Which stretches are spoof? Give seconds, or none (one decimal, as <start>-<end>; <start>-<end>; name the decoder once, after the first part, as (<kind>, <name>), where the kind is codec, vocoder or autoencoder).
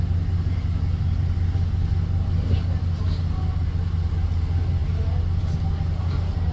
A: none